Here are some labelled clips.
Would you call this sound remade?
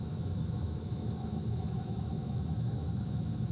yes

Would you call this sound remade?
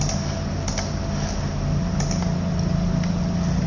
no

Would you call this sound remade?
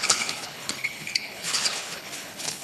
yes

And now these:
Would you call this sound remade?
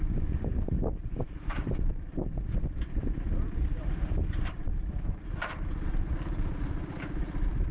yes